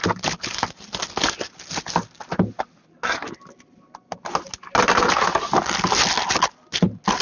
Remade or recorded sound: recorded